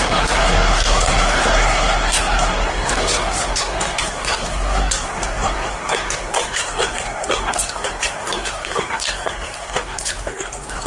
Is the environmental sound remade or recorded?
remade